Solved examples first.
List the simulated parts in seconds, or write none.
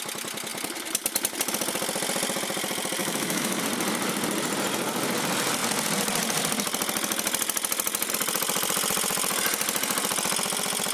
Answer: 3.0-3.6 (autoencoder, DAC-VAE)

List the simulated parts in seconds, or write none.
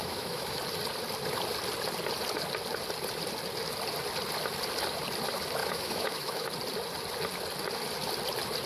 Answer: 0.0-0.6 (autoencoder, DAC-VAE); 5.6-6.5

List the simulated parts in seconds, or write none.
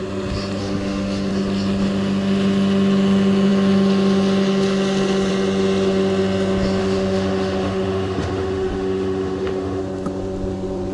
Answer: 0.6-1.3 (autoencoder, DAC-VAE); 6.8-9.8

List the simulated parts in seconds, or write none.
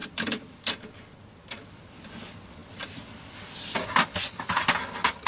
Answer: none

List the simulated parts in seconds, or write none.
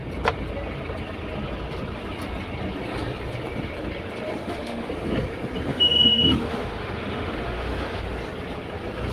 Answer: 4.4-4.9 (autoencoder, DAC-VAE); 5.7-8.0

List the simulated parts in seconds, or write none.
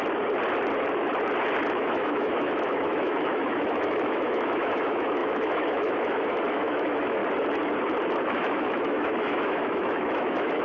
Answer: 1.7-7.2 (autoencoder, DAC-VAE); 8.2-10.6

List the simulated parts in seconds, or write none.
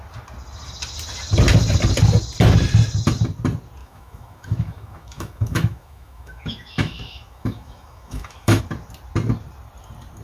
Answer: 3.8-8.6 (autoencoder, DAC-VAE)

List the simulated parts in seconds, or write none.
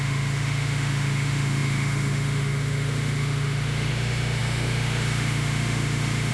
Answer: 0.0-6.3 (autoencoder, DAC-VAE)